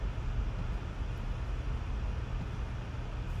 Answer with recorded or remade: recorded